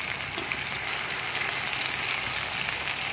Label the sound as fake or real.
real